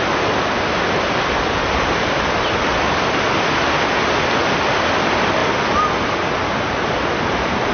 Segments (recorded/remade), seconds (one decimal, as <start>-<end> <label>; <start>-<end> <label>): 0.0-7.7 recorded